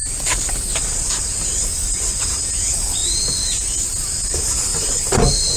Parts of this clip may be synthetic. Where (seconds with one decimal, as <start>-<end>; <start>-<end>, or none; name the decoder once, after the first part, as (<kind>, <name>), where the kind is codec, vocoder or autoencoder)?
0.0-3.0 (vocoder, BigVGAN v2); 3.8-5.6